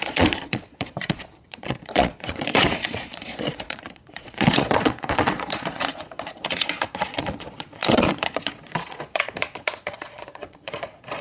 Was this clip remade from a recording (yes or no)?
yes